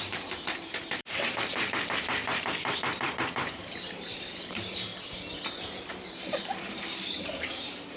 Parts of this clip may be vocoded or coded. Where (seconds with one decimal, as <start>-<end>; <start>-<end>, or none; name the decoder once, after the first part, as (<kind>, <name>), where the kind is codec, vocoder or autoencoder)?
0.0-4.9 (vocoder, BigVGAN v2); 5.9-8.0